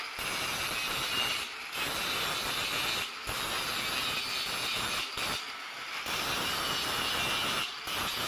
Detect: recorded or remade recorded